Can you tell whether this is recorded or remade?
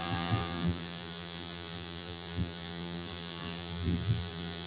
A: remade